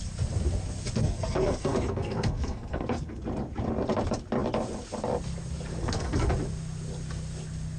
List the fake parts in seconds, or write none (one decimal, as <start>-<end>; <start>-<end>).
1.0-3.2; 5.8-6.3